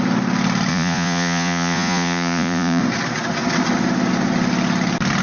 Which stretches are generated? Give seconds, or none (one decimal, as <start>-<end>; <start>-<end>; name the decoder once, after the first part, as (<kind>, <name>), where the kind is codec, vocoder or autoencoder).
0.7-2.8 (vocoder, Vocos)